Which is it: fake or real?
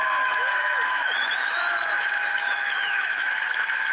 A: fake